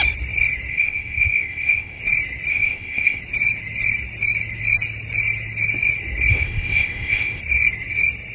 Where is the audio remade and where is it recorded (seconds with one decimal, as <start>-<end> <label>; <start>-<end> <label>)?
0.0-0.7 recorded; 0.7-2.0 remade; 2.0-2.5 recorded; 2.5-3.2 remade; 3.2-6.3 recorded; 6.3-7.4 remade; 7.4-8.3 recorded